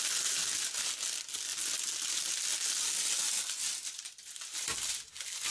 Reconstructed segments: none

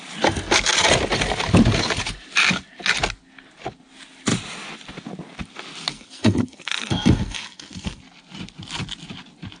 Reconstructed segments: 5.9-8.0

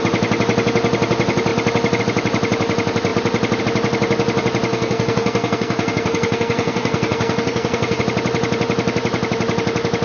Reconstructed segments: 4.7-8.0

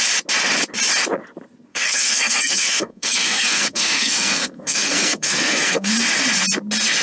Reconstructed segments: 1.7-5.9

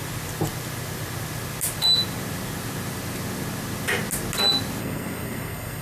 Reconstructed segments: 4.8-5.8

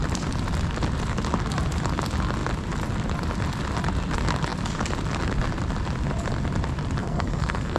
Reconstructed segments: 7.0-7.8

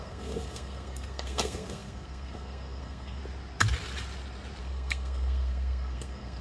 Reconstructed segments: 0.0-3.2; 4.6-6.4